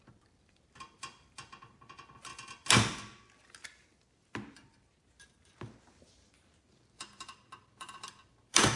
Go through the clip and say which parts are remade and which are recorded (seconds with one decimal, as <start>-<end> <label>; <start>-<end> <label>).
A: 0.0-2.3 remade; 2.3-6.3 recorded; 6.3-8.8 remade